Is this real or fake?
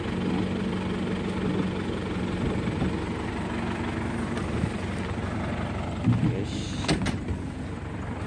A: real